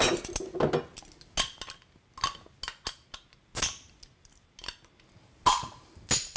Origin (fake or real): real